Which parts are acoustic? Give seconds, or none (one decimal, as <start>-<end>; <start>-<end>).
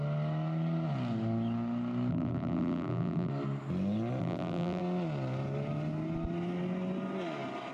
0.0-2.1; 3.3-4.2; 4.8-7.7